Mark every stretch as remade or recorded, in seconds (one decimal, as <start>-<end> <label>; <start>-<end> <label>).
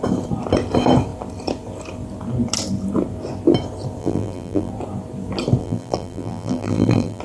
0.0-4.0 recorded; 4.0-4.7 remade; 4.7-5.6 recorded; 5.6-7.2 remade